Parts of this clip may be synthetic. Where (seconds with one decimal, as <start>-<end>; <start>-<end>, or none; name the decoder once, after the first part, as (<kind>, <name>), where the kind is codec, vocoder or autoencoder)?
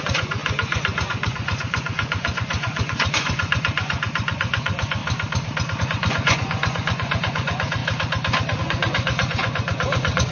0.0-5.0 (vocoder, Vocos); 5.8-7.8; 8.6-10.3